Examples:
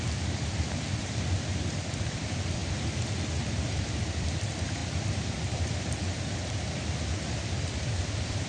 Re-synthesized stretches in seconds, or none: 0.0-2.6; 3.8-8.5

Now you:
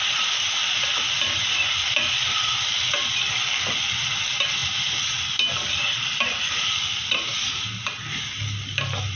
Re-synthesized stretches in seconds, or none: none

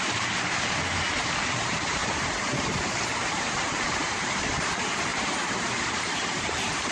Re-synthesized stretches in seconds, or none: 0.0-6.9

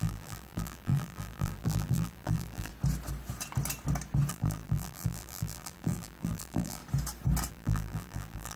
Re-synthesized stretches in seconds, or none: 0.0-2.7; 4.3-6.8; 7.5-8.6

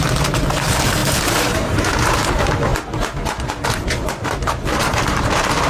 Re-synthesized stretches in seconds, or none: 0.0-5.7

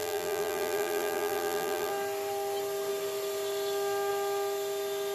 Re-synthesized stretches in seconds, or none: 0.0-1.9

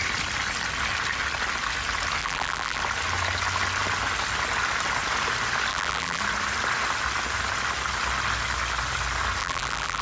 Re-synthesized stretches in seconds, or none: 2.2-2.8; 5.7-6.2; 9.4-10.0

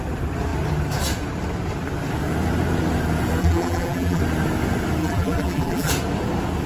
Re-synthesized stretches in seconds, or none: 3.4-4.2; 5.0-5.9